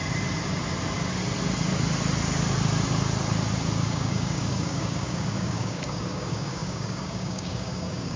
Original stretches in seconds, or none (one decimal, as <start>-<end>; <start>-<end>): 0.0-3.9